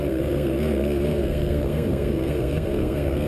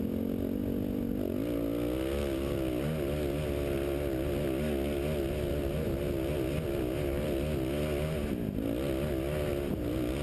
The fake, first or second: first